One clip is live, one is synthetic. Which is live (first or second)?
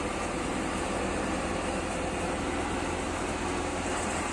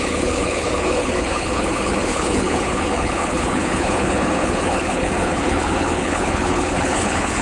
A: first